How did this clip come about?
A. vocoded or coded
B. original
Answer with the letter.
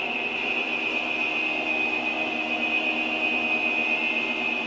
B